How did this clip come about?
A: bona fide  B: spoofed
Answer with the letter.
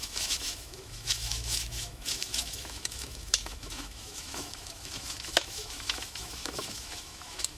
B